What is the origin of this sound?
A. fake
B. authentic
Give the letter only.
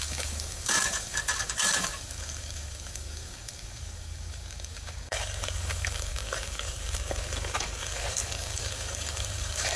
A